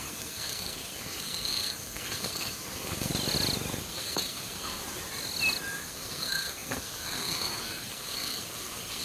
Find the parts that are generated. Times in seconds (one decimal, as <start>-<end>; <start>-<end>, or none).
0.0-3.1; 3.8-4.8; 5.7-9.0